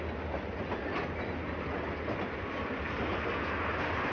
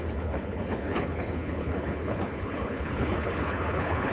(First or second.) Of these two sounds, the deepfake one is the second